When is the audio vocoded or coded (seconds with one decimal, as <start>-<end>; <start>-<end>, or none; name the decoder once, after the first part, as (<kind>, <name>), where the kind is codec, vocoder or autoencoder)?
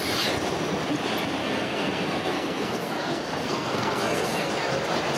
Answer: 1.4-4.5 (codec, SNAC)